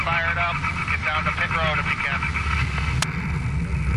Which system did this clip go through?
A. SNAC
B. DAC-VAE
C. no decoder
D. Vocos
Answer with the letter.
C